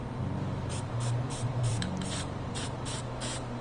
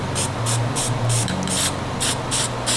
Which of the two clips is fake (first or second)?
first